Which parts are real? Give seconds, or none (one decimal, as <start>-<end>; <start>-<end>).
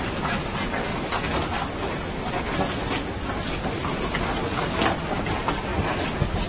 0.0-0.9; 4.8-6.5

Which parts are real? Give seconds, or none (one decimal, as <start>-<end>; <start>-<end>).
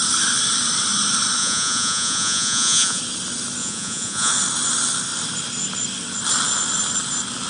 0.0-1.4; 3.0-3.6; 4.3-7.5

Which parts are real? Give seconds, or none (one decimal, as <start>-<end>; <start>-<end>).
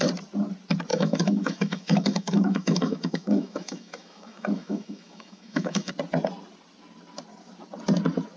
0.0-0.9; 5.9-8.4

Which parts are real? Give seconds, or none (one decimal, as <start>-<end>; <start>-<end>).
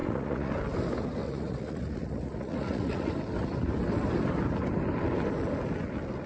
0.5-1.2; 3.1-6.3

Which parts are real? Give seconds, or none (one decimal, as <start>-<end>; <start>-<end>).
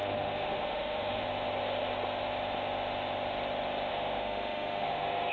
1.2-3.9